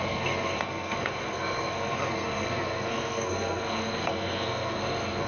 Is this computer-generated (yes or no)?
yes